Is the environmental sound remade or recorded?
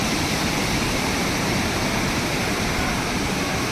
remade